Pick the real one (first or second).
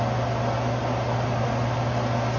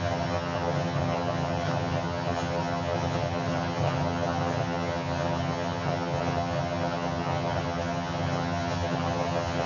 first